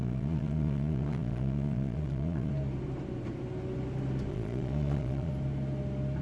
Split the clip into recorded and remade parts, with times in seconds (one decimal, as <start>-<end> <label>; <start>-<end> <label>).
0.0-2.5 remade; 2.5-4.3 recorded; 4.3-5.3 remade; 5.3-6.2 recorded